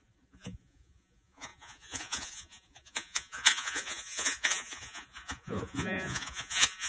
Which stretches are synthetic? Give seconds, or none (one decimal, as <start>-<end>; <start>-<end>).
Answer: 0.0-6.9